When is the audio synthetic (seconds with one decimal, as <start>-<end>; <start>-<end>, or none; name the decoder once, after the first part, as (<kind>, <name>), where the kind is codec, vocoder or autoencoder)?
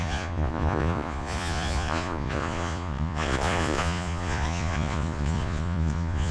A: 0.0-6.3 (vocoder, Vocos)